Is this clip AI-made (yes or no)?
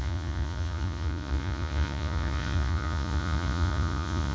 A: yes